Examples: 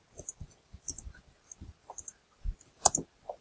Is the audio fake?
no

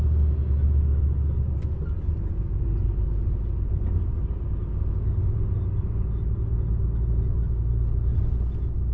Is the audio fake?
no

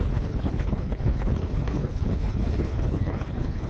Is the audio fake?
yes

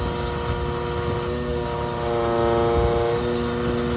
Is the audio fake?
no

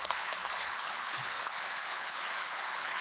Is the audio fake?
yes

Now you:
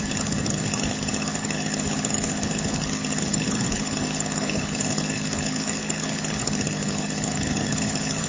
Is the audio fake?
yes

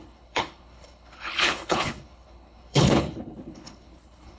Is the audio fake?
yes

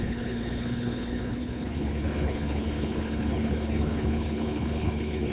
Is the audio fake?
yes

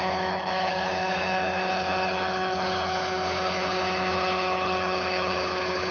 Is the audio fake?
yes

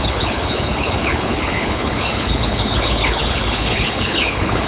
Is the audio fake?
yes